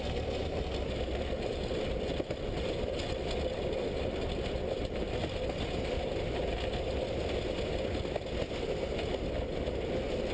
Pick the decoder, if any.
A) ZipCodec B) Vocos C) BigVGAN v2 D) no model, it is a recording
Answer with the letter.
D